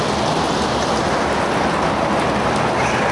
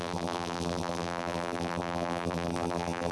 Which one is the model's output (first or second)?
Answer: second